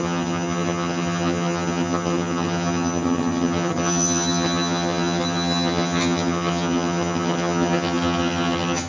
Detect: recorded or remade remade